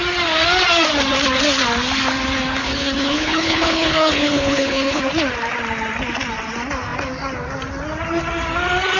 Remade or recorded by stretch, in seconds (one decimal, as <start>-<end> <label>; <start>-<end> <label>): 0.0-2.6 recorded; 2.6-5.0 remade; 5.0-9.0 recorded